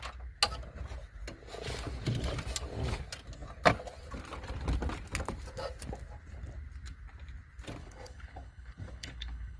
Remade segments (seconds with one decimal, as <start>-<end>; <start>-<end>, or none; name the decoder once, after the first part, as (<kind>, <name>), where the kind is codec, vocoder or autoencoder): 7.8-9.6 (codec, HILCodec)